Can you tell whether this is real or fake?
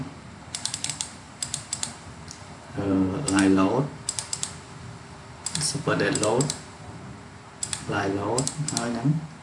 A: fake